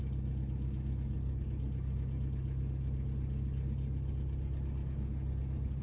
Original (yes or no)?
yes